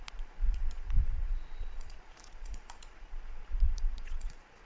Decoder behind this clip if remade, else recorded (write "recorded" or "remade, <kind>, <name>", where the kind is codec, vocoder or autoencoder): remade, vocoder, Vocos